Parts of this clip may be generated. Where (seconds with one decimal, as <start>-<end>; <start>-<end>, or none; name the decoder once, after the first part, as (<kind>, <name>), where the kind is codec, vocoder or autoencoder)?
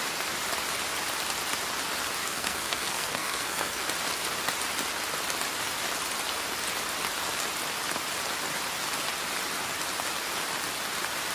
2.2-3.8 (codec, SNAC)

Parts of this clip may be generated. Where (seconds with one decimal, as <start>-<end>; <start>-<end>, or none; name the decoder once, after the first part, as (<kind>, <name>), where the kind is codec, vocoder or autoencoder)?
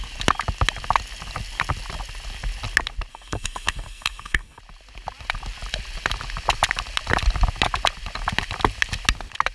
3.1-4.6 (codec, SNAC)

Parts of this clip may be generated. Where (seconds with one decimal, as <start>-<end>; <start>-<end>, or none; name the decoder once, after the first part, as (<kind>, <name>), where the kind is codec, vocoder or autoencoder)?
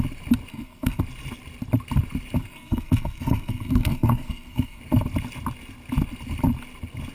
0.5-1.0 (codec, SNAC); 2.4-4.8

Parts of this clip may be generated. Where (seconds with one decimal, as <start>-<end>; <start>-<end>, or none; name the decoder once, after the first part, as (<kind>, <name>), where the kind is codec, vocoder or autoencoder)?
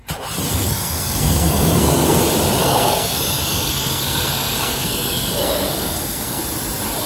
0.5-2.2 (codec, SNAC); 2.6-6.4